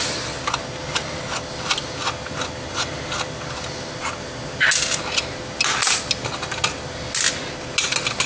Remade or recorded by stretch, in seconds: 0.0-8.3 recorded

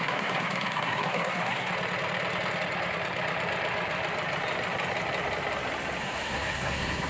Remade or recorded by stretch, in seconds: 0.0-1.7 remade; 1.7-6.0 recorded; 6.0-7.1 remade

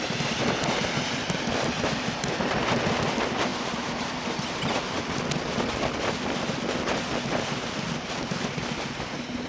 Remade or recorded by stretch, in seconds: 0.0-9.5 recorded